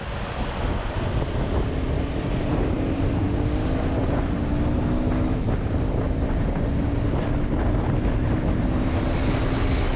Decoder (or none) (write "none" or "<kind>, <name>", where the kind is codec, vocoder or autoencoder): none